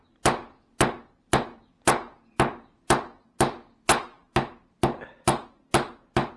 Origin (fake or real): real